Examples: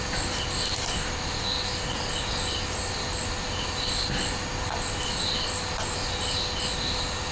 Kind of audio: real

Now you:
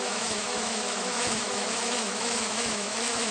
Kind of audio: fake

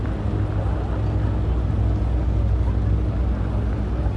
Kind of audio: real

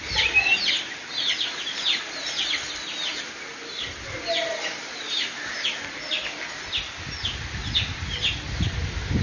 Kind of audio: real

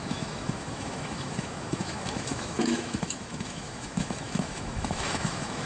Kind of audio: fake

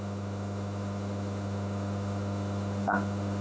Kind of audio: fake